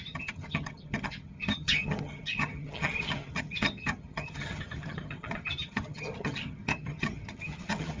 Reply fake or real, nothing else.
fake